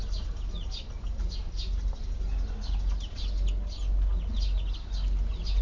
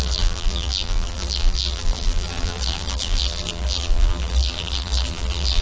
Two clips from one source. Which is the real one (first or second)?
first